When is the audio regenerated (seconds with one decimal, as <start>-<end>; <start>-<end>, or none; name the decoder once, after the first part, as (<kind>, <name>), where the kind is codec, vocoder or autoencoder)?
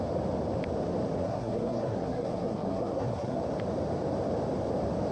1.2-3.4 (codec, SNAC)